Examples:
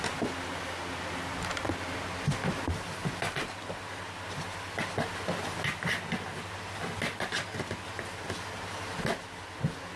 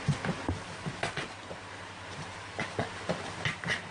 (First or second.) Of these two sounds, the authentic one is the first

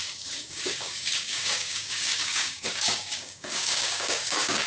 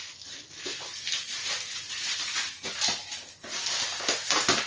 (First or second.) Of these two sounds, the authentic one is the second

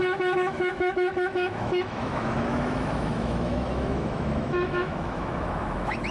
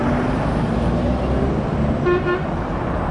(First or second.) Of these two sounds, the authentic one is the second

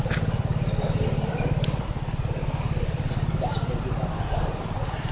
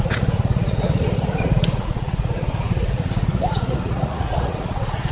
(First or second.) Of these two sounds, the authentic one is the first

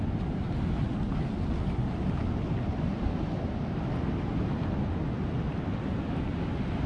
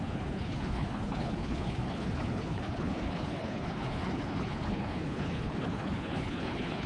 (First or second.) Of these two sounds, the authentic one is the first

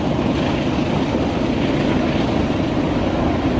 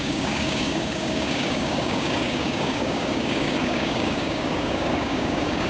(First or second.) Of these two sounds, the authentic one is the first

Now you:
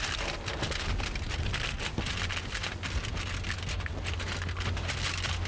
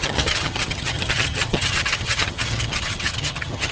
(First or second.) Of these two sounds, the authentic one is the first